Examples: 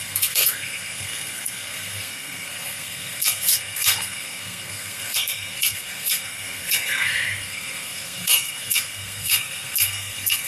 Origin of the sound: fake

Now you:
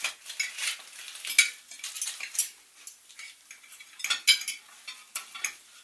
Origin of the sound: real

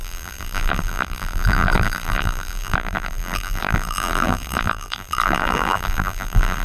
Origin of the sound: fake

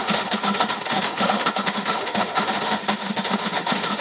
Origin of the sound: fake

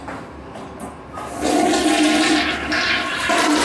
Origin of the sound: real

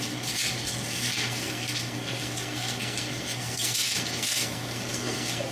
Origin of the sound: fake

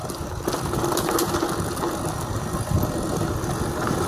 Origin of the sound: real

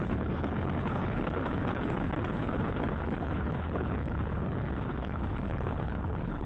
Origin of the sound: fake